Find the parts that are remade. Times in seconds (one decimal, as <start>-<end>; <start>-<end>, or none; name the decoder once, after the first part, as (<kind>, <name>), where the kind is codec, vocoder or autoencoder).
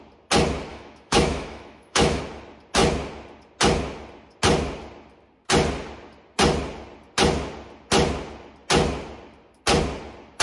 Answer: 0.7-2.2 (autoencoder, DAC-VAE)